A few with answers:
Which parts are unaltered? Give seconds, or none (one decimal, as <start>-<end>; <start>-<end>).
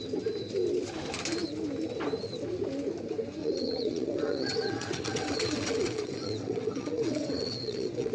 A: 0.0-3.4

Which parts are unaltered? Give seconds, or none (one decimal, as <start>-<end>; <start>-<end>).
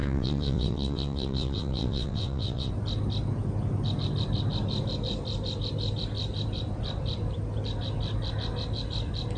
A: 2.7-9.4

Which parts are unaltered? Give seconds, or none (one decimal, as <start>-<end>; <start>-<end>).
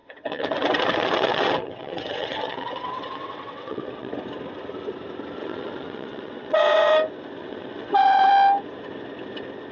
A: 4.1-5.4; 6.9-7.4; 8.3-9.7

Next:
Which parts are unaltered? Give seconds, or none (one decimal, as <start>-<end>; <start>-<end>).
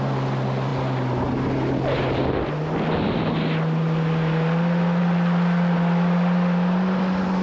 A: 0.0-7.4